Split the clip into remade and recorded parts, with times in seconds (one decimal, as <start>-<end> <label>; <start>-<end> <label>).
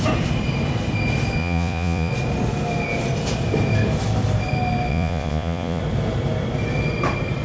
0.0-1.4 recorded; 1.4-2.1 remade; 2.1-4.9 recorded; 4.9-5.8 remade; 5.8-7.4 recorded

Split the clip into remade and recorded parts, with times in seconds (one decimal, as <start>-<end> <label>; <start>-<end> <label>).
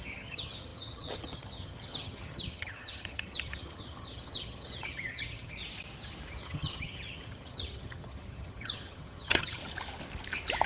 0.0-5.6 remade; 5.6-6.4 recorded; 6.4-9.6 remade; 9.6-10.7 recorded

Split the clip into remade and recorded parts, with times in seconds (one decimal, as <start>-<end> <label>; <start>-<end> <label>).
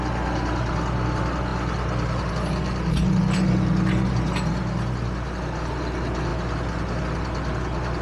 0.0-8.0 recorded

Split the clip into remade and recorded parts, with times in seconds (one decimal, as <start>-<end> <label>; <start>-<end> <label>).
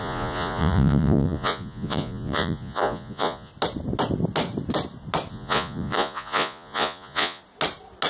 0.0-3.5 remade; 3.5-5.3 recorded; 5.3-7.4 remade; 7.4-8.1 recorded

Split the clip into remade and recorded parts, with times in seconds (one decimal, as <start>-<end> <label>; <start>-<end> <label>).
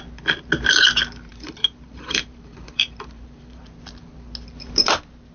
0.0-1.3 recorded; 1.3-3.6 remade; 3.6-5.3 recorded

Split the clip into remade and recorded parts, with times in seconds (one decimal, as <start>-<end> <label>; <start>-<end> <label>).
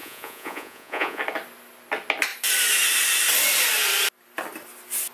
0.0-1.2 remade; 1.2-5.1 recorded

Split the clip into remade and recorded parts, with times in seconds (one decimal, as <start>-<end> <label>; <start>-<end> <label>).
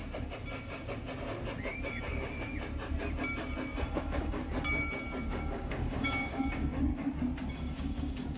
0.0-2.1 recorded; 2.1-2.5 remade; 2.5-4.0 recorded; 4.0-4.4 remade; 4.4-5.2 recorded; 5.2-6.9 remade; 6.9-7.5 recorded; 7.5-8.4 remade